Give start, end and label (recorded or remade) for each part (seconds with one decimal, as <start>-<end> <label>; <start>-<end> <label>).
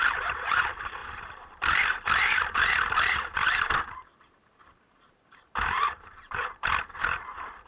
0.0-7.7 remade